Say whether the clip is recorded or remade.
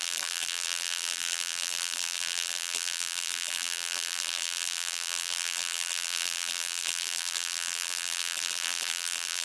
remade